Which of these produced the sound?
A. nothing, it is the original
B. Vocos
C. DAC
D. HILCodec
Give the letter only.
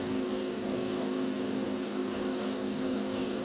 C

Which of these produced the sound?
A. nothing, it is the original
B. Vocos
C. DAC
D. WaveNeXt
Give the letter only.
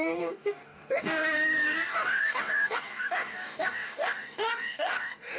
C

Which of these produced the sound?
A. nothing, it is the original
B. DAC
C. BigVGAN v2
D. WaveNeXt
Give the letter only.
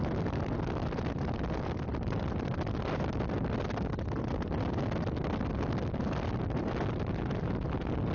A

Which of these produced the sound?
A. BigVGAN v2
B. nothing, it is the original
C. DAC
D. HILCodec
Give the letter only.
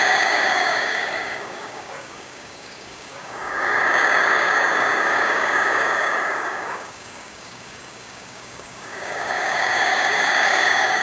C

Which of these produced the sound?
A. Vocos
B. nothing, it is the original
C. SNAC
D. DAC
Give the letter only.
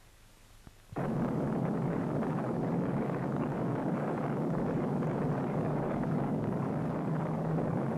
D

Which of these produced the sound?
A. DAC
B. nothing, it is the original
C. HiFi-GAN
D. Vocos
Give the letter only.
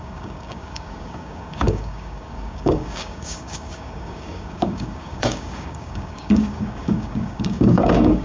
A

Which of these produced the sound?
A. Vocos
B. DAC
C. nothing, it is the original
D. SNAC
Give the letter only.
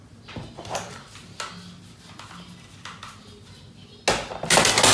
C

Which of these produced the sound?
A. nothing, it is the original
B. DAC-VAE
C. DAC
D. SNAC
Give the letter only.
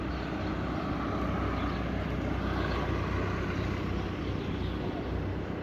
A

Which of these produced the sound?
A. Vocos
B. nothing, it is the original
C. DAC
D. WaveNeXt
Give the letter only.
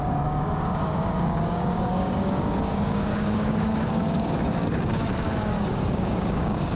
C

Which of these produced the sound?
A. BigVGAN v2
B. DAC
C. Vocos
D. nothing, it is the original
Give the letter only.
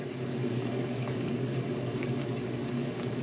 B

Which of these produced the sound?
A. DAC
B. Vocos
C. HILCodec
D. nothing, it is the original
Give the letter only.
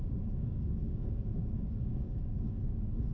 A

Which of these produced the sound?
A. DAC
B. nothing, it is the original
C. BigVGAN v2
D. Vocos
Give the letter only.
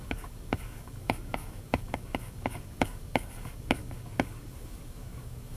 A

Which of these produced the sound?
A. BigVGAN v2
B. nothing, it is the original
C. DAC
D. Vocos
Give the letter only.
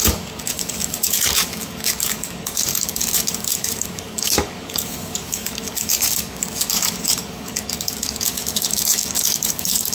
C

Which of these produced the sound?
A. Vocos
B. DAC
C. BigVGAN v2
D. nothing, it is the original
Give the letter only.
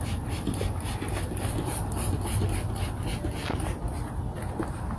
D